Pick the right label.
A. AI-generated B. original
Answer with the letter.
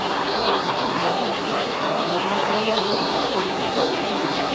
A